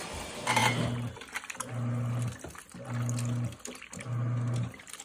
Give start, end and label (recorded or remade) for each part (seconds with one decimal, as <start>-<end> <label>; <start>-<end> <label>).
0.0-5.0 recorded